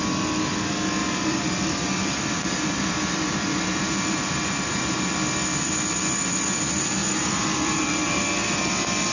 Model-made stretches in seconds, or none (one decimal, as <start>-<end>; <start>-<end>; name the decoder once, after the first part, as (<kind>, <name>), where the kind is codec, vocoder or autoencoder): 1.0-5.1 (vocoder, BigVGAN v2); 7.0-8.2